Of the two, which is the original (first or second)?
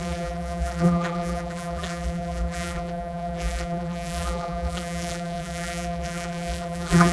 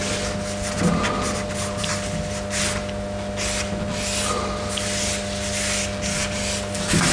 second